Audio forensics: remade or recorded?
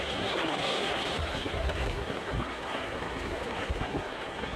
remade